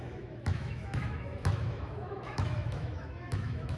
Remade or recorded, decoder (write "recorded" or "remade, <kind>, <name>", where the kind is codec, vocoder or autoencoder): remade, autoencoder, DAC-VAE